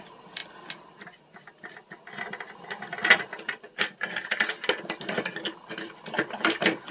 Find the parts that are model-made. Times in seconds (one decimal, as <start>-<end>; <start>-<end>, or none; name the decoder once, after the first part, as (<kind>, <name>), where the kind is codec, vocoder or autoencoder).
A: none